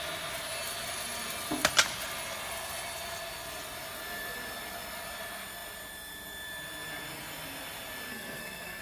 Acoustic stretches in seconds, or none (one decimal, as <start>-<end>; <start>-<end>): 0.0-8.1